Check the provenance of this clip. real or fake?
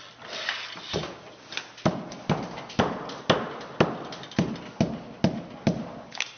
real